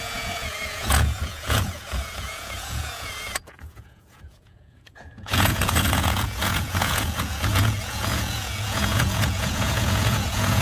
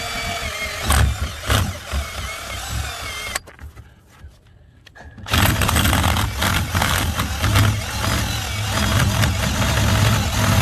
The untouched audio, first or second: second